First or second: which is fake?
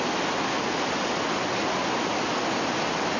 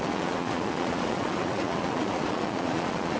second